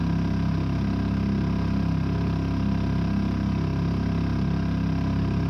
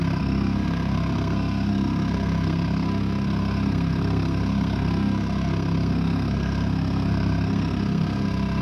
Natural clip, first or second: first